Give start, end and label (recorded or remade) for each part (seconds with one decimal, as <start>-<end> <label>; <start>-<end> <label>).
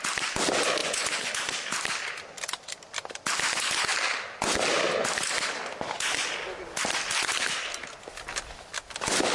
0.0-0.8 recorded; 0.8-1.3 remade; 1.3-9.3 recorded